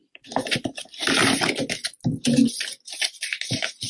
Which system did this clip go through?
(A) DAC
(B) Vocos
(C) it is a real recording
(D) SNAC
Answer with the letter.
C